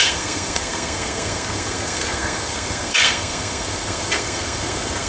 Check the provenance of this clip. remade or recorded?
remade